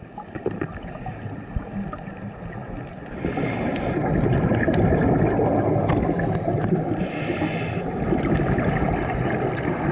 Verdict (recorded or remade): recorded